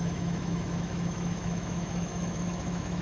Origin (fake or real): fake